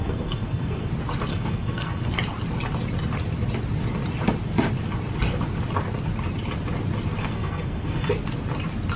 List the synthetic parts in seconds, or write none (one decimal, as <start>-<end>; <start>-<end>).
0.0-0.9; 1.3-2.1; 7.2-8.1